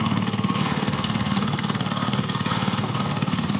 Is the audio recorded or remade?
remade